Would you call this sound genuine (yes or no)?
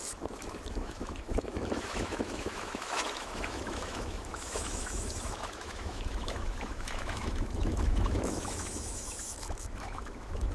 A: no